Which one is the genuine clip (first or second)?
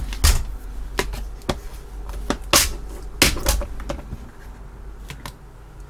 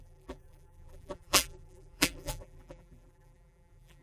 first